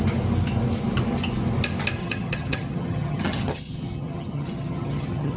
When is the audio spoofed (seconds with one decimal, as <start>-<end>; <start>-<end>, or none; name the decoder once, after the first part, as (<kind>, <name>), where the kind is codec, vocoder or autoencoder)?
2.0-5.4 (vocoder, HiFi-GAN)

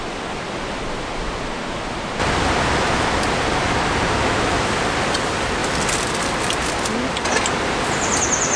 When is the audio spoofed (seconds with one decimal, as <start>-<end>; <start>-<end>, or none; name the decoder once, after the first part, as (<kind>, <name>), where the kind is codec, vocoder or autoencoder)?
none

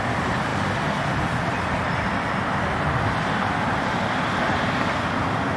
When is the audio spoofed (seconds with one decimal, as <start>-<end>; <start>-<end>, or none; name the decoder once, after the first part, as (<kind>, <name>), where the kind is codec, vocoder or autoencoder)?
0.0-0.5 (vocoder, BigVGAN v2); 3.8-5.6

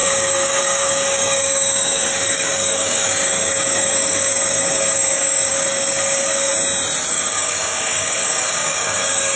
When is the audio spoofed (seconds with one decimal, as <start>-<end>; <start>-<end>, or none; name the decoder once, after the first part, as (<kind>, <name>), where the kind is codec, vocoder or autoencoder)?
0.0-6.5 (codec, DAC); 7.1-9.4

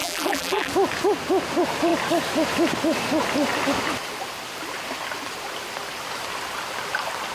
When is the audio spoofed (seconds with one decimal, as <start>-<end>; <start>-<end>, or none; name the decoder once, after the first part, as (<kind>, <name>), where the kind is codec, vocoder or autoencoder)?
0.0-0.7 (vocoder, BigVGAN v2)

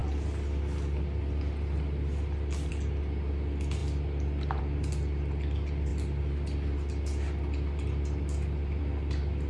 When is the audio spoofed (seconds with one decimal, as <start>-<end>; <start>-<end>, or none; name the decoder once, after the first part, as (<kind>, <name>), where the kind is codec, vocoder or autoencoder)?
none

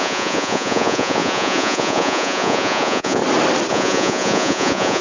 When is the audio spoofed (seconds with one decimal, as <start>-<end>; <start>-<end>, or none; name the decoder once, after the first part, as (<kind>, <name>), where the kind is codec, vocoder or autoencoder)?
0.0-3.2 (vocoder, Vocos); 3.7-5.0